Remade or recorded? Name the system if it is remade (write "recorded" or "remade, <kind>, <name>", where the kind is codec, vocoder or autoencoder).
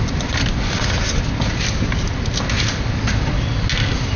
recorded